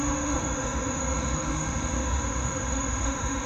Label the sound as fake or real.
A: fake